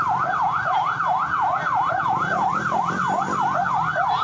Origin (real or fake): real